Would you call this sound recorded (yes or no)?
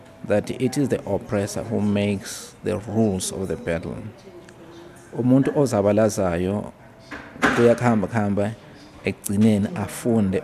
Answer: yes